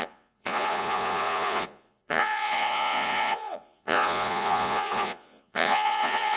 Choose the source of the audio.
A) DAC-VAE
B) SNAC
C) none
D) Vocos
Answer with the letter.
D